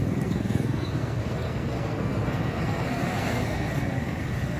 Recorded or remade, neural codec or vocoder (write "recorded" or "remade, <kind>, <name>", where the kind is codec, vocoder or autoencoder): remade, codec, SNAC